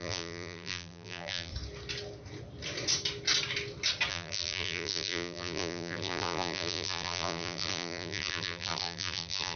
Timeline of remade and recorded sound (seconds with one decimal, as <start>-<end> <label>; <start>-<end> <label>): 0.0-1.5 remade; 1.5-4.1 recorded; 4.1-9.6 remade